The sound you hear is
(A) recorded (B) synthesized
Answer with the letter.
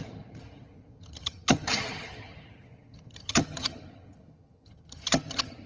B